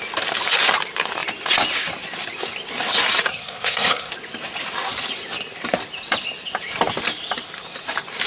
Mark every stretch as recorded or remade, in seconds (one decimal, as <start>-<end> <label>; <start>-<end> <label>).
0.0-3.3 recorded; 3.3-4.1 remade; 4.1-8.3 recorded